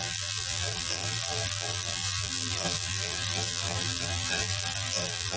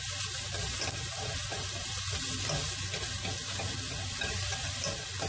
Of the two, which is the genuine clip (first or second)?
second